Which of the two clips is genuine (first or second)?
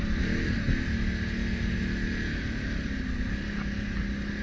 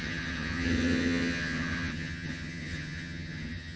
first